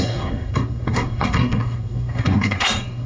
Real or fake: fake